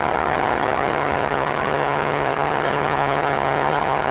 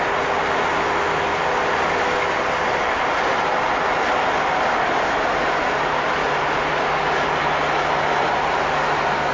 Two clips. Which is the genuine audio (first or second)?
second